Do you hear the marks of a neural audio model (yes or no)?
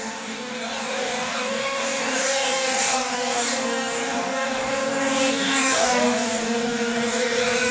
yes